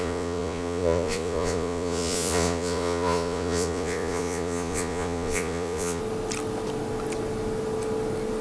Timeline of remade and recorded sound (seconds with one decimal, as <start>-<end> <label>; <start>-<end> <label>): 0.0-6.0 remade; 6.0-8.4 recorded